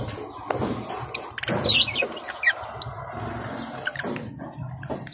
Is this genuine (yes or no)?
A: yes